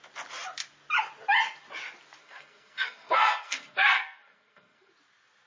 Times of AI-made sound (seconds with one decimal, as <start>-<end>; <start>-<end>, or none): 2.2-4.9